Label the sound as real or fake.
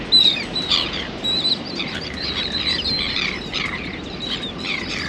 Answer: fake